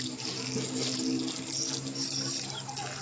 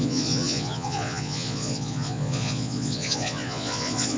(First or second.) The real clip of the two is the first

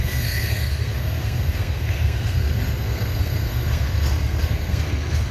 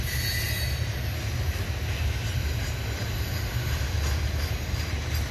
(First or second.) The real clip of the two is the second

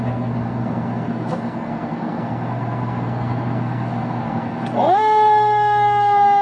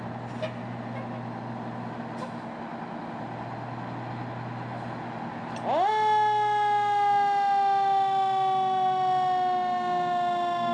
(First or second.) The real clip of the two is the second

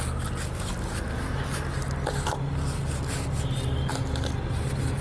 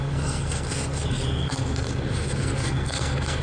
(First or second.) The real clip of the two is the first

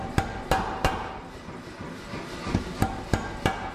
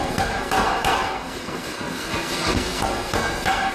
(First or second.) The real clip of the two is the first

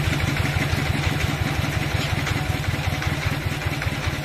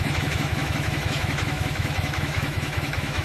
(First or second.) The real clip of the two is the first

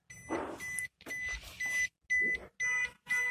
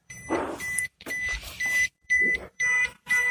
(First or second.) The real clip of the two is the first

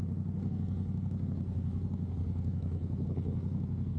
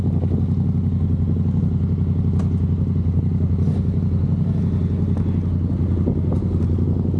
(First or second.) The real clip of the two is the second